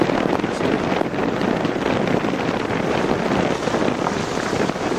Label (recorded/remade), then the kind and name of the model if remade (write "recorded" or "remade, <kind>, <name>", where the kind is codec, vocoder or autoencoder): recorded